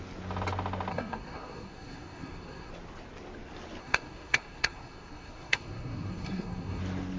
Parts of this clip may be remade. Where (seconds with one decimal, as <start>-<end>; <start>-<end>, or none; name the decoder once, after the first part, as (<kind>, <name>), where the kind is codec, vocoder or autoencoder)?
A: 0.9-2.7 (codec, SNAC); 3.8-6.8